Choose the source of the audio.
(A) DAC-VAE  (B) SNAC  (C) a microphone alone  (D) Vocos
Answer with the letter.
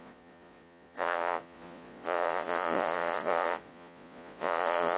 D